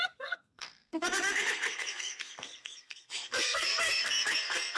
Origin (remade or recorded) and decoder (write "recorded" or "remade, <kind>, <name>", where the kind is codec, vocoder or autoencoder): remade, codec, SNAC